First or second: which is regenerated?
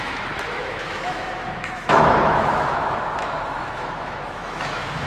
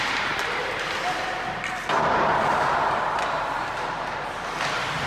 first